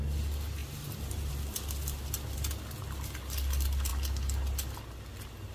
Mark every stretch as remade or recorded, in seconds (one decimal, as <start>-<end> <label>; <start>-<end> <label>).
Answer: 0.0-0.6 recorded; 0.6-1.3 remade; 1.3-5.5 recorded